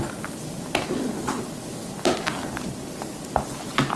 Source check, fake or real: real